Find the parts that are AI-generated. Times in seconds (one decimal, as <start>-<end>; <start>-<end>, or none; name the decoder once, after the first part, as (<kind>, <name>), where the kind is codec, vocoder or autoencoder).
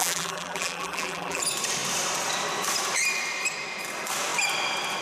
0.0-1.4 (vocoder, BigVGAN v2)